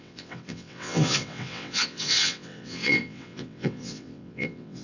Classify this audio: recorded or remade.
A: remade